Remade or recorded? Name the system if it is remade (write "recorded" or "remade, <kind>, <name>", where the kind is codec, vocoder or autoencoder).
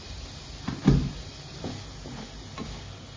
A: recorded